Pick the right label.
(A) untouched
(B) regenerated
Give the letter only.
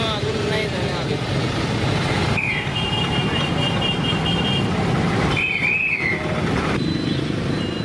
B